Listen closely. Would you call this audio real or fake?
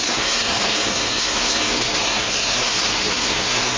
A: fake